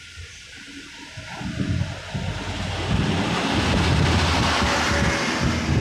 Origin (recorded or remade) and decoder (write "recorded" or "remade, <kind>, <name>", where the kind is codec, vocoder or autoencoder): recorded